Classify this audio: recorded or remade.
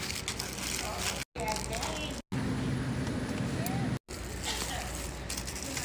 recorded